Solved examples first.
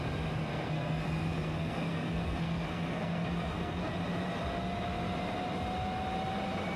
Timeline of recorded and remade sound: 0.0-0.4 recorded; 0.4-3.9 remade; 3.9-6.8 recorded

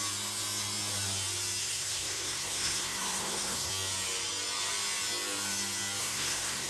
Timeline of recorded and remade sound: 0.0-1.6 recorded; 1.6-3.7 remade; 3.7-6.0 recorded; 6.0-6.7 remade

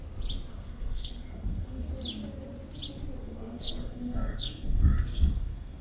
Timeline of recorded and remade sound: 0.0-0.5 recorded; 0.5-1.9 remade; 1.9-3.2 recorded; 3.2-5.8 remade

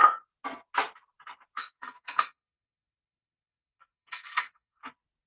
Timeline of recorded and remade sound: 0.0-1.6 recorded; 1.6-4.8 remade; 4.8-5.3 recorded